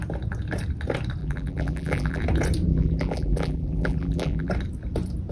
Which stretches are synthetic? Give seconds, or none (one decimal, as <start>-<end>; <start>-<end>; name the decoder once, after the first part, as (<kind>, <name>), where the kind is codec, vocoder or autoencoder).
1.2-2.2 (vocoder, BigVGAN v2); 2.7-4.5